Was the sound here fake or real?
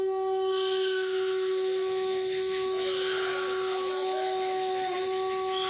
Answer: fake